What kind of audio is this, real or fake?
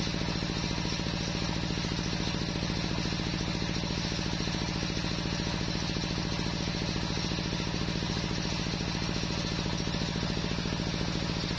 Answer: real